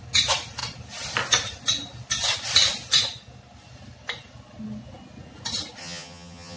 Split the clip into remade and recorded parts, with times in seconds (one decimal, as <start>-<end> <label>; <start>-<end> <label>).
0.0-5.8 recorded; 5.8-6.6 remade